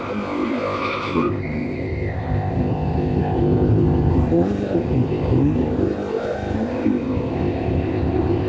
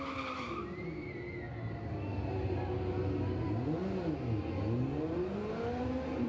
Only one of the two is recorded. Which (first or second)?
second